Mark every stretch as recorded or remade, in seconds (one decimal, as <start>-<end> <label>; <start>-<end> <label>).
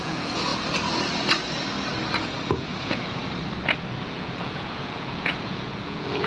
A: 0.0-0.5 remade; 0.5-2.5 recorded; 2.5-3.2 remade; 3.2-4.0 recorded; 4.0-6.3 remade